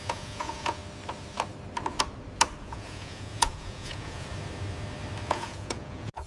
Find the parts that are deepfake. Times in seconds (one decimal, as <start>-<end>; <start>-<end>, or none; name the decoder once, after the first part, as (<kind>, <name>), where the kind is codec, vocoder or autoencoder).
0.0-0.8 (vocoder, Vocos); 2.6-4.3; 5.3-6.3